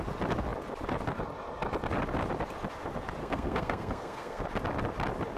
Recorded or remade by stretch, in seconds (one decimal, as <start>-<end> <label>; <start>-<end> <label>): 0.0-3.2 recorded; 3.2-4.4 remade; 4.4-5.4 recorded